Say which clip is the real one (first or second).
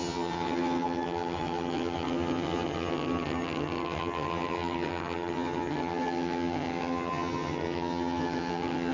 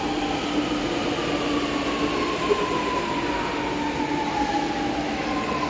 second